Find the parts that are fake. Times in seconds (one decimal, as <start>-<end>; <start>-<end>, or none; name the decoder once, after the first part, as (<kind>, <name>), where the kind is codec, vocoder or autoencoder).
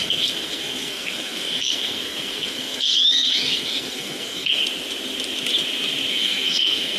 0.0-4.6 (codec, SNAC); 6.1-7.0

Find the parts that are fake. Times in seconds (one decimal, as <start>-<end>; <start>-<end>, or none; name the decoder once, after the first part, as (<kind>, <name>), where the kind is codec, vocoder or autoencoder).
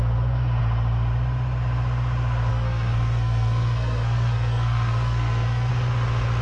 2.5-5.7 (codec, SNAC)